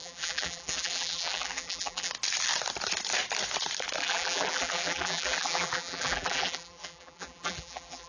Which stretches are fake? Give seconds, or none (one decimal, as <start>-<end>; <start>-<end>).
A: 0.0-2.1; 4.0-8.1